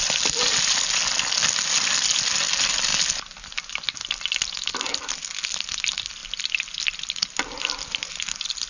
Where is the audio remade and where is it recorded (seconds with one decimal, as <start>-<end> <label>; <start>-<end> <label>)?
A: 0.0-8.7 recorded